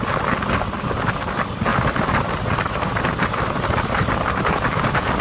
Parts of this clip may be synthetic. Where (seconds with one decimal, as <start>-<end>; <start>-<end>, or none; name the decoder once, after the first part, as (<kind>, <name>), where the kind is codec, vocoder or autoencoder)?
1.7-4.8 (vocoder, BigVGAN v2)